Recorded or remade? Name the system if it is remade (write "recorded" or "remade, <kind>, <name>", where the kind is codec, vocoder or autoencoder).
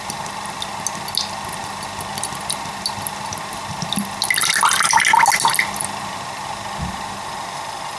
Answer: recorded